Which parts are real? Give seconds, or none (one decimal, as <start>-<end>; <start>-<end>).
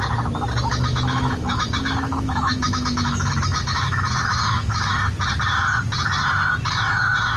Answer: 0.0-0.7; 5.1-7.4